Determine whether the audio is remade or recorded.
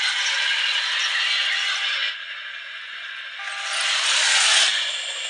recorded